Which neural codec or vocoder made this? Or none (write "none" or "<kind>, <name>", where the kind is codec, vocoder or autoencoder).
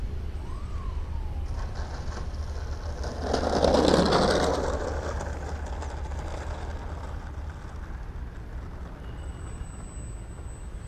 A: none